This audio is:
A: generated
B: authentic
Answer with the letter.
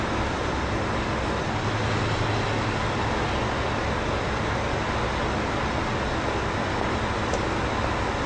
B